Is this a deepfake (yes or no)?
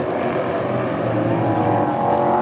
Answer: no